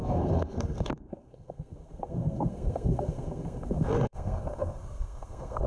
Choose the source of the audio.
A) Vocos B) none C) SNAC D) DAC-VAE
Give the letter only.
C